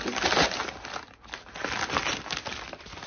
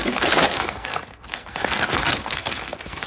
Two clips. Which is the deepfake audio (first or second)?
second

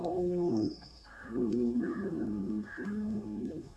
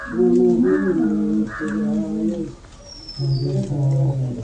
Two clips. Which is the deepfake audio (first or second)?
first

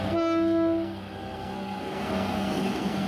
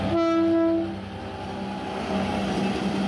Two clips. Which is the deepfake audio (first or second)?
first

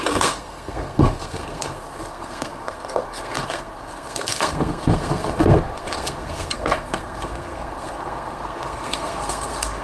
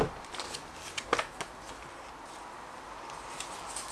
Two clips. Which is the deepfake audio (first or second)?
first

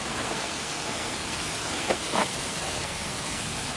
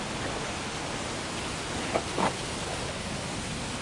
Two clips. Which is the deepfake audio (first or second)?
first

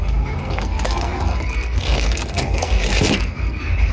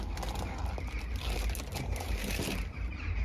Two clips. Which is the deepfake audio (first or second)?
first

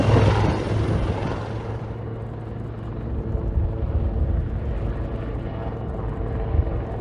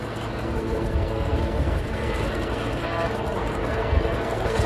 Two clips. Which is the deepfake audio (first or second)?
second